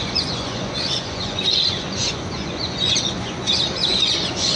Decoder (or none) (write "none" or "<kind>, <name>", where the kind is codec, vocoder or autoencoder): vocoder, Vocos